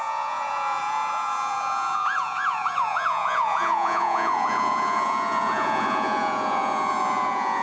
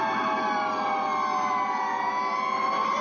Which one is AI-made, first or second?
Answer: first